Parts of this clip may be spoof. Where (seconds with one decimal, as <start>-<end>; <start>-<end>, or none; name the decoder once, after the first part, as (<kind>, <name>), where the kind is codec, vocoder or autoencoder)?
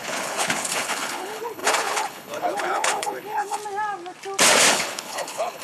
0.0-3.6 (codec, HILCodec); 4.7-5.6